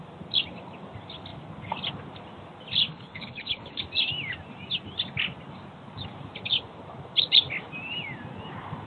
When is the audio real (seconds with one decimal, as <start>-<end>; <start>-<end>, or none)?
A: 0.0-2.9; 3.8-8.9